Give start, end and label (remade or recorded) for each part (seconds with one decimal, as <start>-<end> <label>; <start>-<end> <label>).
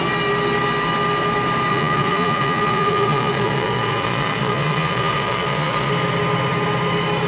0.0-1.7 recorded; 1.7-5.9 remade; 5.9-7.3 recorded